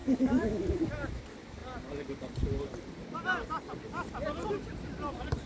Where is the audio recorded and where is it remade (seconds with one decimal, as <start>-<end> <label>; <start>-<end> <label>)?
0.0-0.9 remade; 0.9-5.5 recorded